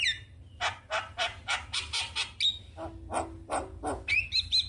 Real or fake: real